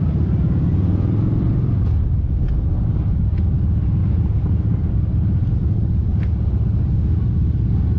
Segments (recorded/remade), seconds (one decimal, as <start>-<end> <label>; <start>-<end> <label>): 0.0-4.0 recorded; 4.0-4.5 remade; 4.5-5.4 recorded; 5.4-6.5 remade; 6.5-8.0 recorded